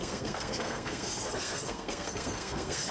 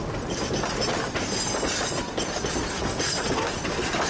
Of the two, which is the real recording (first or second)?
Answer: second